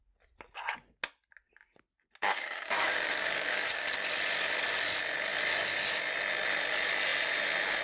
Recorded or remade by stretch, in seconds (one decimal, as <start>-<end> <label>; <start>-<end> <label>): 0.0-2.2 recorded; 2.2-3.9 remade; 3.9-7.8 recorded